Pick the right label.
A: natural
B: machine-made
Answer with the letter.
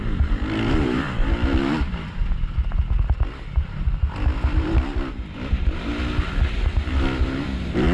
A